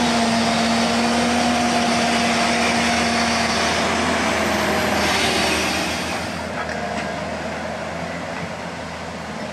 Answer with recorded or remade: recorded